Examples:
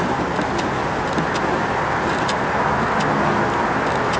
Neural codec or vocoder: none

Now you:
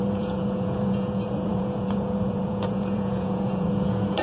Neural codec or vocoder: vocoder, Vocos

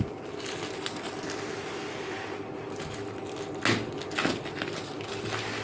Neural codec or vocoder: none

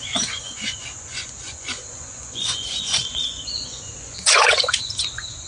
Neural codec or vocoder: vocoder, Vocos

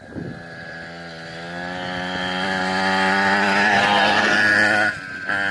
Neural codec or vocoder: none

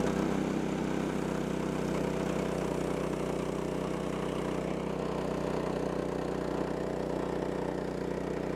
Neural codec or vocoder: none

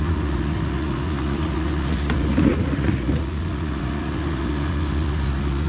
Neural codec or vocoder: vocoder, Vocos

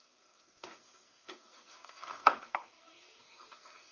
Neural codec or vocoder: codec, SNAC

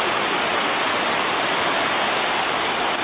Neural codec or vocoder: none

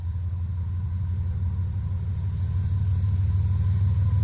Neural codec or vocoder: vocoder, BigVGAN v2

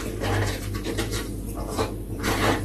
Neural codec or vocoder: none